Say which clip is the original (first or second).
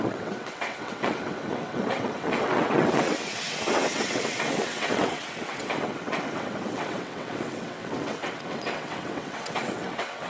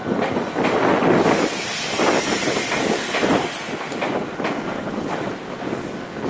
second